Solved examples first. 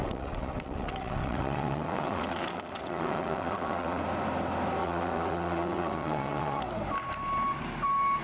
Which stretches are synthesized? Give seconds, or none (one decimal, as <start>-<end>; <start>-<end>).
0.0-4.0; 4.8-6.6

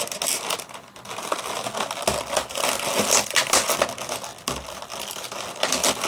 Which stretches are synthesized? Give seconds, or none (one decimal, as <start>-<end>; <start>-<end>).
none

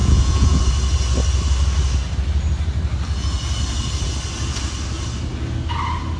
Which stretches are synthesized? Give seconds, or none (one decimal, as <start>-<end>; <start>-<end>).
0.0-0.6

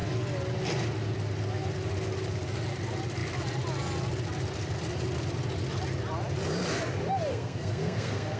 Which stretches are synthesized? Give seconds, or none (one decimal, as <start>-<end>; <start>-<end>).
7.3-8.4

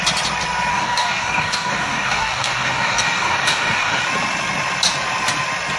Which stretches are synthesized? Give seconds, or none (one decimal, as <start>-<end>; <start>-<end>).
0.7-4.0